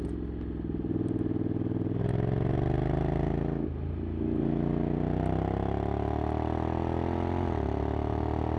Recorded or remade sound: recorded